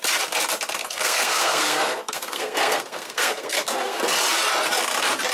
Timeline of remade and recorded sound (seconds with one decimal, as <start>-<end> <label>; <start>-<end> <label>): 0.0-0.8 recorded; 0.8-4.0 remade; 4.0-5.3 recorded